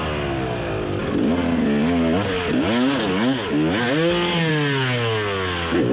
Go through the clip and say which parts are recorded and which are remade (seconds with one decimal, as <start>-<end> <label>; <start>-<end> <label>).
0.0-5.9 recorded